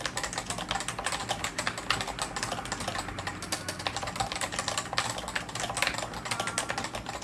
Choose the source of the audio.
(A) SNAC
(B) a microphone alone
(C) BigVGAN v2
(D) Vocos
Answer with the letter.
B